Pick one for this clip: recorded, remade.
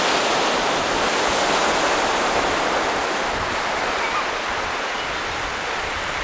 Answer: recorded